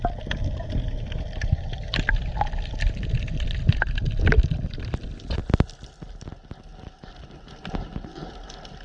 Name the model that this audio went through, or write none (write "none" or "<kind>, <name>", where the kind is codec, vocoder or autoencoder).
none